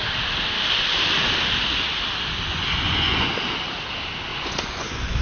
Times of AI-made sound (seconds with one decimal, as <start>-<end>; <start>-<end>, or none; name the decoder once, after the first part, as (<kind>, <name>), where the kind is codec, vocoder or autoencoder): 2.5-3.3 (vocoder, Vocos); 4.3-5.2